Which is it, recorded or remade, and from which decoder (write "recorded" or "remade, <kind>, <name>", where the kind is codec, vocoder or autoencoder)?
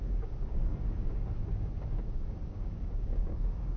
remade, codec, DAC